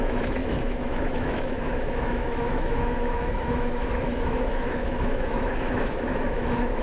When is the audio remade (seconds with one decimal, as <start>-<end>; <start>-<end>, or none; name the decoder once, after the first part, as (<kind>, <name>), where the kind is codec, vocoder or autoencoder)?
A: 0.0-6.8 (autoencoder, DAC-VAE)